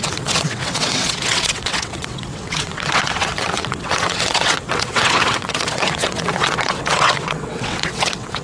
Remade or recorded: remade